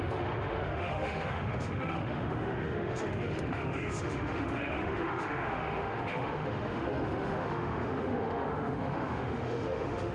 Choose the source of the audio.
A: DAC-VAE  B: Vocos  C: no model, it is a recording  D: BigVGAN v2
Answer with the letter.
A